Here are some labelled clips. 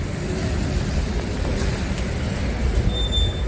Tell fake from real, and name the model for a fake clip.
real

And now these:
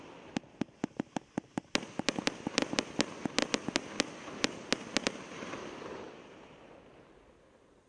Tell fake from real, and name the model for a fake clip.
real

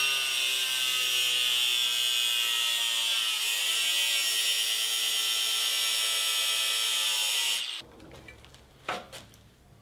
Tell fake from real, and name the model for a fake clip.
real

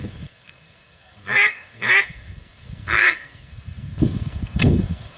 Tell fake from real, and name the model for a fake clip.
fake, codec, SNAC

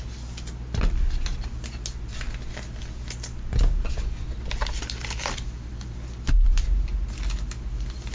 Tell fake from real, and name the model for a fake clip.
real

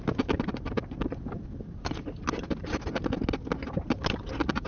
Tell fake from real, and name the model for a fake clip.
real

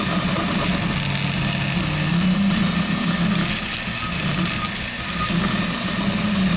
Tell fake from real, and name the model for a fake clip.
real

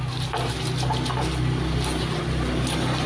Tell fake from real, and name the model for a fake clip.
real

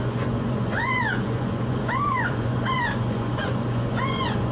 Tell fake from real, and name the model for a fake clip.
fake, vocoder, Vocos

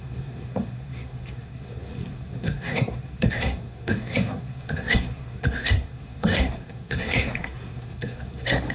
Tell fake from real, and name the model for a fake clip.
fake, codec, SNAC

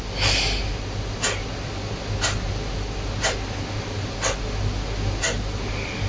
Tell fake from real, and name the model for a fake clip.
real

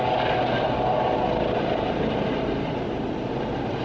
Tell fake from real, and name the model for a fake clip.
real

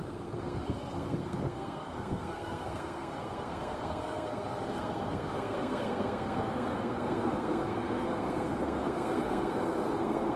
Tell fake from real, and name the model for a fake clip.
fake, codec, SNAC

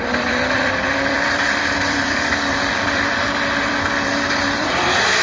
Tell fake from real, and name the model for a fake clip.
fake, vocoder, BigVGAN v2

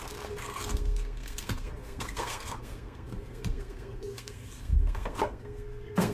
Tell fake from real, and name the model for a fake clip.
fake, codec, SNAC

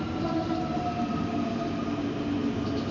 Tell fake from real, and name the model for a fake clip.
real